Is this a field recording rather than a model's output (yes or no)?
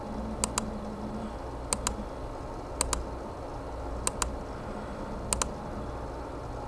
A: yes